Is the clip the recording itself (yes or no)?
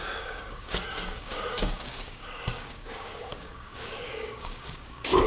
no